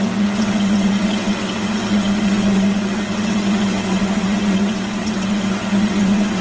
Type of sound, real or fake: fake